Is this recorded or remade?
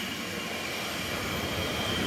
recorded